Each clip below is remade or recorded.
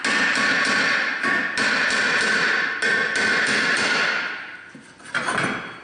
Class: recorded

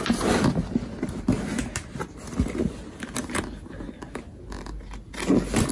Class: recorded